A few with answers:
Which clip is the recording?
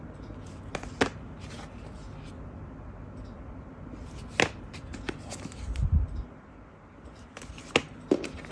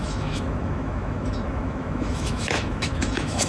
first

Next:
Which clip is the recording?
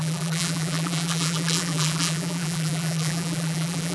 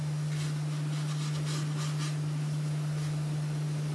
second